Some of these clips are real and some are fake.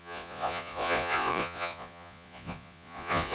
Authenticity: fake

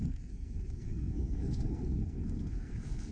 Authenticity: fake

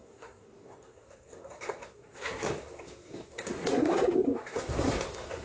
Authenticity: fake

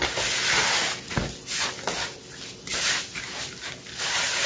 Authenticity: real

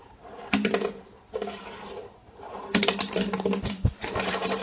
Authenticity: fake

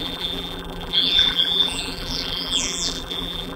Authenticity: fake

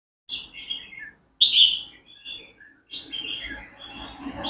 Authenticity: real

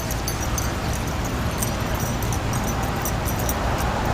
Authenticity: real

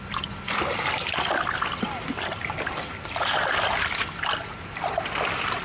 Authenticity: real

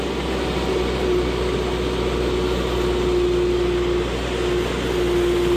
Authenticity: real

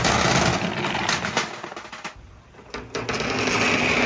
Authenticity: real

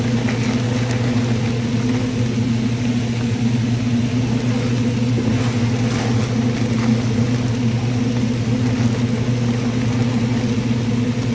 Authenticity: real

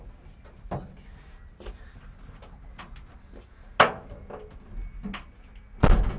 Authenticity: real